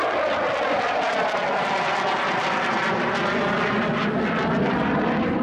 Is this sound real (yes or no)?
yes